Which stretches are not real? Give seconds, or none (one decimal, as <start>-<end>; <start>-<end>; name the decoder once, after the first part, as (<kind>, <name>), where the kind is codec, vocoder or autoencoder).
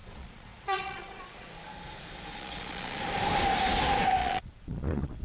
0.0-1.5 (vocoder, Vocos); 2.3-3.0; 4.2-5.2